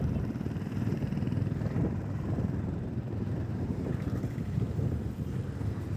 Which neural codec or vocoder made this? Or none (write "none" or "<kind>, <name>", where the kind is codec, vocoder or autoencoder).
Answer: vocoder, BigVGAN v2